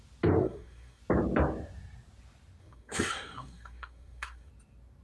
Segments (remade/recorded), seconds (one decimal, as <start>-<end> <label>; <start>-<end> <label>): 0.0-0.4 recorded; 0.4-1.0 remade; 1.0-2.6 recorded; 2.6-4.5 remade; 4.5-5.0 recorded